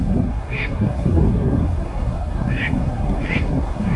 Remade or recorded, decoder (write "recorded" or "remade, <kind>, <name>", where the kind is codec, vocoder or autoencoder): remade, codec, SNAC